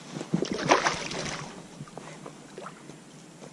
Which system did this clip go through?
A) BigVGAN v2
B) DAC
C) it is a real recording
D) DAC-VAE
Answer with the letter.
C